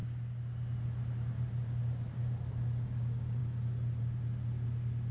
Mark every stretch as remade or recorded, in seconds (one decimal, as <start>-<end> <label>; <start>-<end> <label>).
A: 0.0-5.1 recorded